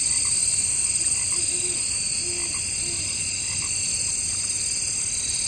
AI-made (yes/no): no